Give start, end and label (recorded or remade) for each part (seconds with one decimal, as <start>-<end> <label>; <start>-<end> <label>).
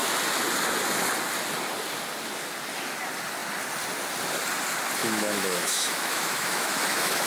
0.0-5.0 recorded; 5.0-7.3 remade